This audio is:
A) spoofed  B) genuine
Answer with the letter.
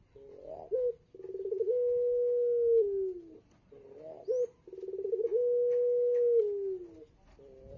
B